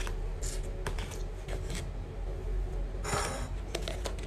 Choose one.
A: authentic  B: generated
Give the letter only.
A